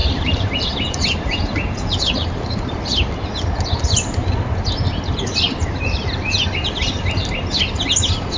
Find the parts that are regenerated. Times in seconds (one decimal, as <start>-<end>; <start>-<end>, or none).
0.0-2.7